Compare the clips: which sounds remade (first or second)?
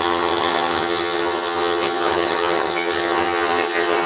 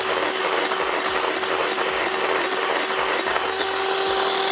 first